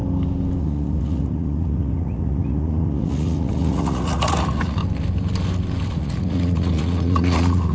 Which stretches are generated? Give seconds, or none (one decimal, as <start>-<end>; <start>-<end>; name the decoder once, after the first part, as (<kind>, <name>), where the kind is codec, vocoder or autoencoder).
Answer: 0.6-4.8 (vocoder, Vocos); 5.9-7.7